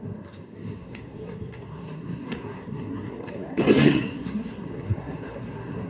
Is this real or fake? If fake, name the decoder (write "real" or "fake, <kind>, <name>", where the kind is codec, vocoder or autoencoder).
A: fake, codec, SNAC